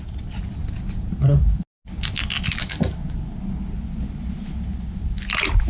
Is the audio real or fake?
real